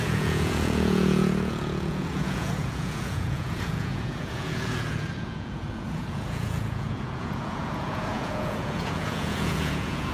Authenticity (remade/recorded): remade